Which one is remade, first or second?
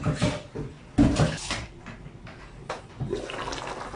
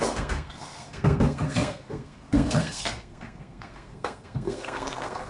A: second